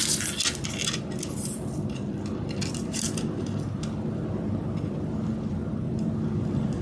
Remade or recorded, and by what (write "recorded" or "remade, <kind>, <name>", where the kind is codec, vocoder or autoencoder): recorded